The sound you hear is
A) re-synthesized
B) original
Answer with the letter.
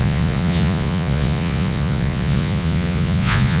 A